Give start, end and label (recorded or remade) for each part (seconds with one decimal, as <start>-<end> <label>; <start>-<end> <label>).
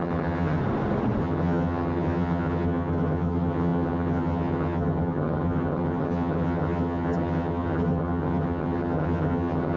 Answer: 0.0-0.6 remade; 0.6-1.2 recorded; 1.2-9.8 remade